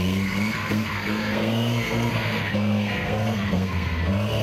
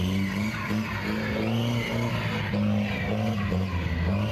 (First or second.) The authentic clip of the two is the second